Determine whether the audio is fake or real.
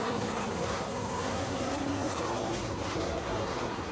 fake